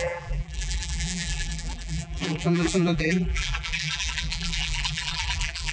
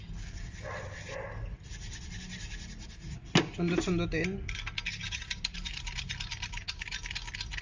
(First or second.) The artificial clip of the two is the first